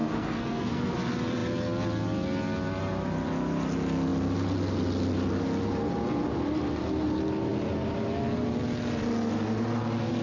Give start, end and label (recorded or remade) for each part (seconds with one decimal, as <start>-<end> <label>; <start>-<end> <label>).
0.0-0.9 remade; 0.9-10.2 recorded